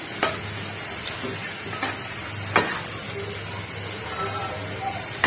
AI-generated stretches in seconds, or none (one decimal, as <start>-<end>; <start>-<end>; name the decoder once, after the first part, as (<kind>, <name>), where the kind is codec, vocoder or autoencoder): 4.4-5.3 (vocoder, BigVGAN v2)